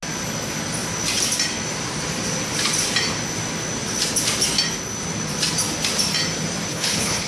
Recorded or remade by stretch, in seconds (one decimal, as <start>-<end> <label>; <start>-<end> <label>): 0.0-6.7 recorded; 6.7-7.3 remade